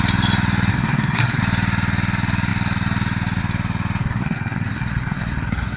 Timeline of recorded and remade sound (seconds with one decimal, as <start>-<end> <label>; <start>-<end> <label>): 0.0-0.7 recorded; 0.7-1.4 remade; 1.4-4.0 recorded; 4.0-5.8 remade